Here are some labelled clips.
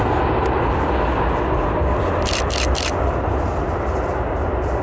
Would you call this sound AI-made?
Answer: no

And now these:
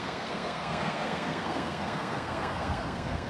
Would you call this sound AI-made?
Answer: yes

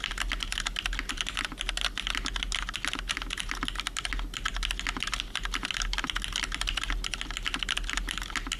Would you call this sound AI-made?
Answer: no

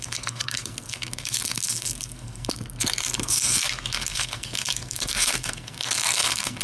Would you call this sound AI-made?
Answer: yes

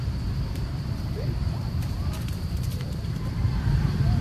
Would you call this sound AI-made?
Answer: yes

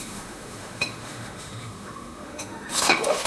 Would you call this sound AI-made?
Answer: yes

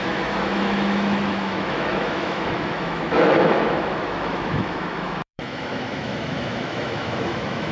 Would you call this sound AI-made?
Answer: yes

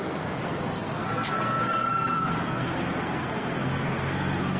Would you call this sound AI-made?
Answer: yes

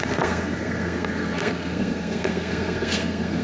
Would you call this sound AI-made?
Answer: yes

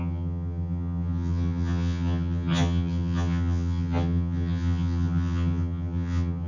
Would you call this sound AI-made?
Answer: yes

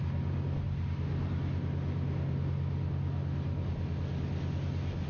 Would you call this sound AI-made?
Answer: no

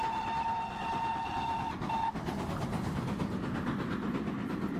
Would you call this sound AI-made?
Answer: no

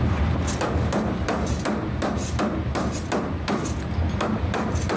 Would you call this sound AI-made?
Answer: no